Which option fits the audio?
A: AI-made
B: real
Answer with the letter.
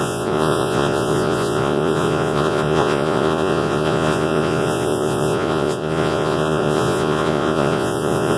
A